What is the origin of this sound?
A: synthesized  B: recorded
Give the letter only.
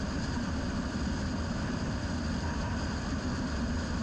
A